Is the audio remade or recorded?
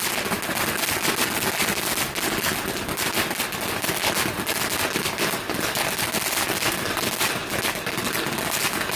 recorded